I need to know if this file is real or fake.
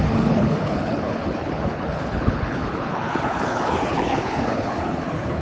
fake